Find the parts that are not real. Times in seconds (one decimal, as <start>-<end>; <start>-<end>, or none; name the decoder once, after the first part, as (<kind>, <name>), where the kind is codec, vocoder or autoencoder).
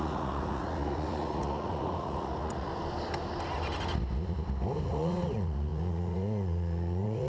0.0-2.7 (vocoder, Vocos); 4.9-7.3